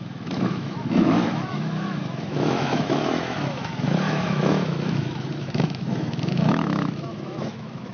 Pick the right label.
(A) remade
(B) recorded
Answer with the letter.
A